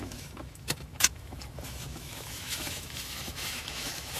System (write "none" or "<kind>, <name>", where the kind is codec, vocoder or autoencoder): autoencoder, DAC-VAE